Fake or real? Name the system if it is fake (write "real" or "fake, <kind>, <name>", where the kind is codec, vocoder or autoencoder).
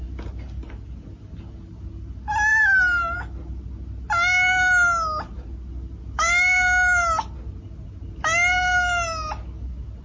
real